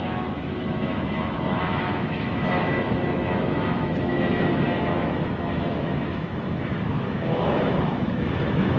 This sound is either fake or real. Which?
fake